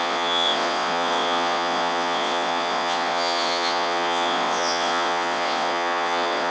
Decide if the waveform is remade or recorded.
remade